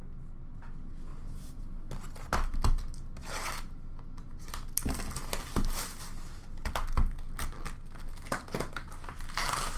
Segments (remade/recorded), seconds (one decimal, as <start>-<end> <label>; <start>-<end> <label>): 0.0-1.1 recorded; 1.1-1.8 remade; 1.8-9.8 recorded